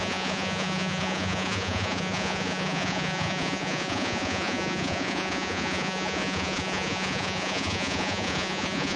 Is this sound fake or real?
fake